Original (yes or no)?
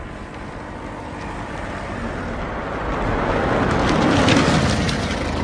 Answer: yes